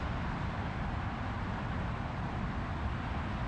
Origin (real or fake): real